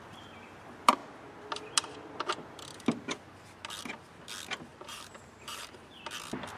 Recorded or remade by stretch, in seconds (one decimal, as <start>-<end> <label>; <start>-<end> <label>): 0.0-4.7 recorded; 4.7-5.9 remade; 5.9-6.6 recorded

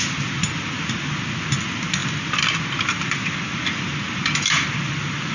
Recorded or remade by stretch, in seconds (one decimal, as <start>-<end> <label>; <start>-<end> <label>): 0.0-5.3 recorded